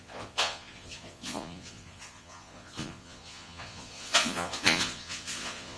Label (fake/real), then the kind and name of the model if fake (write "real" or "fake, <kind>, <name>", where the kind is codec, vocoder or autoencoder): fake, vocoder, Vocos